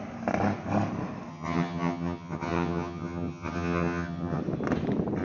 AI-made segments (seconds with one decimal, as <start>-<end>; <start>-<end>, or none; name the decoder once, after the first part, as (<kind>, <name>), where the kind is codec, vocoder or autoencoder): 1.3-4.4 (vocoder, HiFi-GAN)